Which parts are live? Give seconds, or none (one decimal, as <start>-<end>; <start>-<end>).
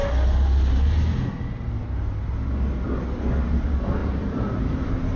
0.0-4.0